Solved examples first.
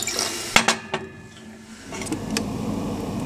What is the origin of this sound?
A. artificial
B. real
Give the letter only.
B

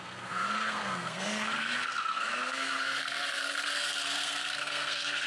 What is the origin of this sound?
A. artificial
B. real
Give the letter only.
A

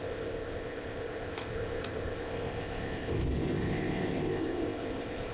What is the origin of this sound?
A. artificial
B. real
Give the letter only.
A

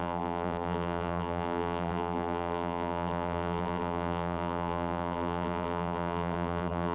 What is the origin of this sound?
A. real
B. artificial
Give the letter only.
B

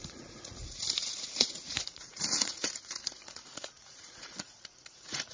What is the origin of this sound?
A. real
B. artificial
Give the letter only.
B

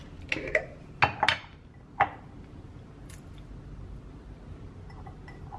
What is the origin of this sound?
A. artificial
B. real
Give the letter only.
B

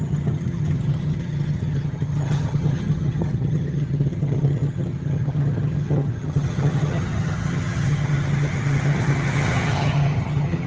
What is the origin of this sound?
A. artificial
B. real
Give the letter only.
A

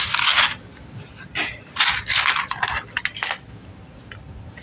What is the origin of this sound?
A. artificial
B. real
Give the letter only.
B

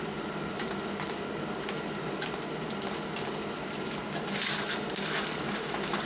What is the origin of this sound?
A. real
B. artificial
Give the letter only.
A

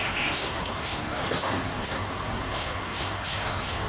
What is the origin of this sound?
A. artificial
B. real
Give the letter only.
A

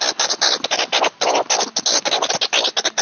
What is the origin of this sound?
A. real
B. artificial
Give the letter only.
A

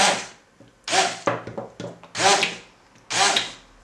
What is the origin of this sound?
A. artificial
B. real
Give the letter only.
B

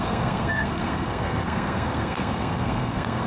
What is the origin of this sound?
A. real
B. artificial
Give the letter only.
B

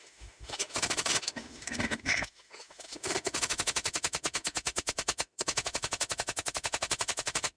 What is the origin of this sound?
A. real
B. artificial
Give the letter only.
B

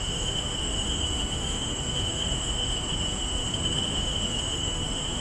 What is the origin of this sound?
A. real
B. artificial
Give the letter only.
B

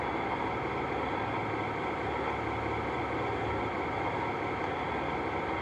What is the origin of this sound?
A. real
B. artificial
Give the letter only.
A